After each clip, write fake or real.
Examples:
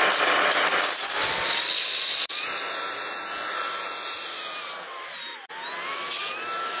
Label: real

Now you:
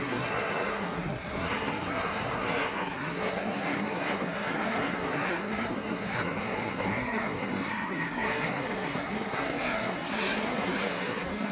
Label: fake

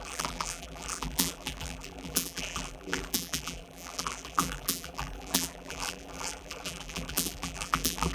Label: fake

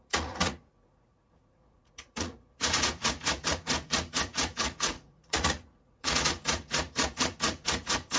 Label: fake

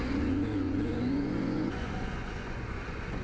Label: fake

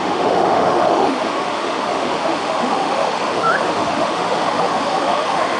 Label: fake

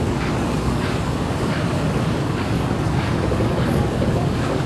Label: fake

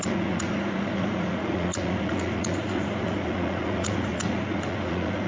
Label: fake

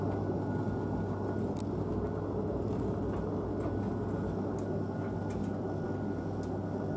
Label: real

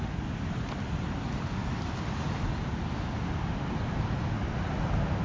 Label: real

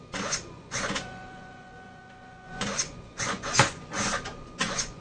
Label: fake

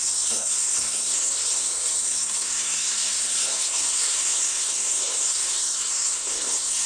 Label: fake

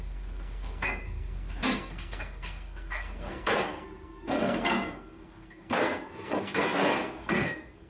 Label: fake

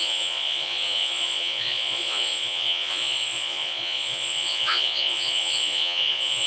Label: fake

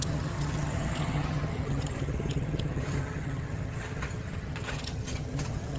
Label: fake